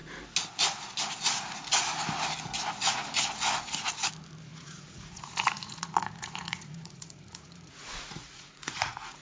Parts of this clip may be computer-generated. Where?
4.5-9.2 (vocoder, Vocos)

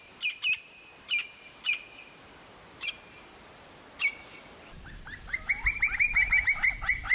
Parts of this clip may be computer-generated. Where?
1.2-5.5 (vocoder, BigVGAN v2)

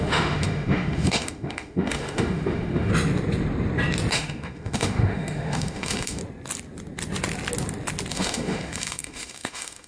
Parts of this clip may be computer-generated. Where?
0.0-2.9 (autoencoder, DAC-VAE); 4.1-6.2; 8.1-9.9

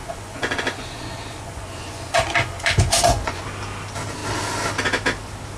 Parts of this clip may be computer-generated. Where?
0.0-3.4 (vocoder, Vocos)

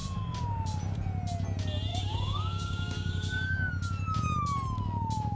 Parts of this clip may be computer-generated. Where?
1.9-3.7 (codec, DAC)

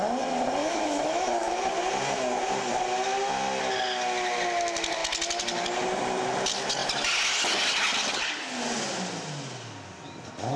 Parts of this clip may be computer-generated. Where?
0.6-1.6 (autoencoder, DAC-VAE)

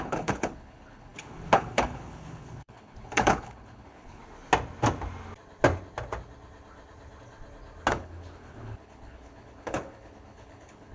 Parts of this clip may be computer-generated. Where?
0.0-4.2 (codec, HILCodec); 7.9-10.9

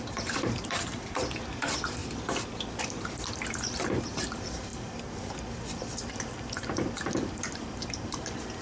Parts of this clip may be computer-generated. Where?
0.0-2.0 (vocoder, BigVGAN v2); 2.8-4.7; 6.1-8.6